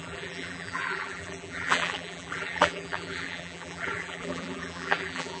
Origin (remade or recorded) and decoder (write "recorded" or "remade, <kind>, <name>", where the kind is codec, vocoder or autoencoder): remade, vocoder, BigVGAN v2